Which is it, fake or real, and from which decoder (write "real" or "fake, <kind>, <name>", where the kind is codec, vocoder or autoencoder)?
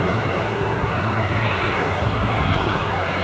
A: fake, codec, SNAC